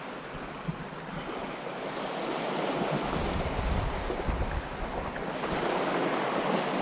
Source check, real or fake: real